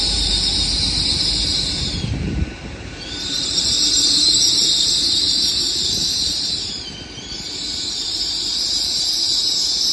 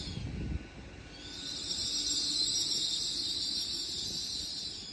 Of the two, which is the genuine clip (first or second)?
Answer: second